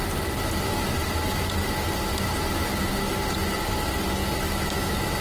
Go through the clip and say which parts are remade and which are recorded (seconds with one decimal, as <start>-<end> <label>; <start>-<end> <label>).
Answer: 0.0-4.2 recorded; 4.2-5.2 remade